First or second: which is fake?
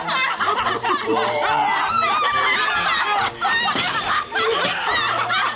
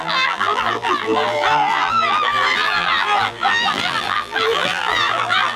second